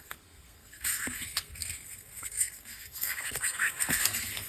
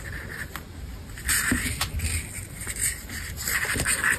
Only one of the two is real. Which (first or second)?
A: second